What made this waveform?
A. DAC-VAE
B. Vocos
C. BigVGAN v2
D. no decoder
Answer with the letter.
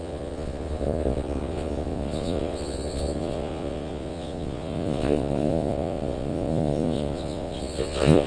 B